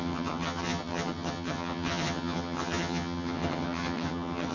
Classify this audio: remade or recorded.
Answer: remade